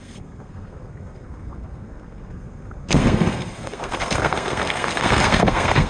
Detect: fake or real fake